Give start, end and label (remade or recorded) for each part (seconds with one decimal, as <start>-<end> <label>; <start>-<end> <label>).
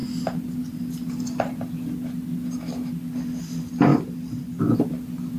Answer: 0.0-5.4 recorded